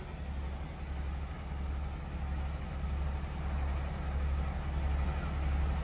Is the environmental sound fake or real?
real